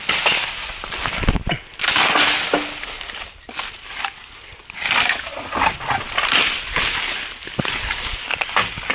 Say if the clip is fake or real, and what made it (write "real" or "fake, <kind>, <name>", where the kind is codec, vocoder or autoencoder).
real